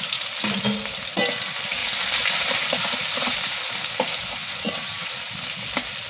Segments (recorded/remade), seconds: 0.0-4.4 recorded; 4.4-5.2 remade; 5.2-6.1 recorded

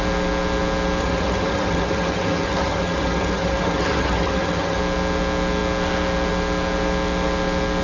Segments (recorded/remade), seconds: 0.0-1.0 recorded; 1.0-4.8 remade; 4.8-7.8 recorded

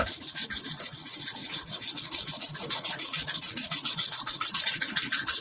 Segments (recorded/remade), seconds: 0.0-5.4 remade

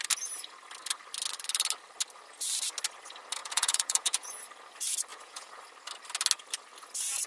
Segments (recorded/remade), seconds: 0.0-3.4 recorded; 3.4-4.3 remade; 4.3-5.1 recorded; 5.1-5.6 remade; 5.6-7.3 recorded